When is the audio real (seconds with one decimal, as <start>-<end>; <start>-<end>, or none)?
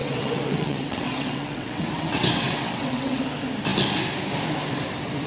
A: 3.2-5.3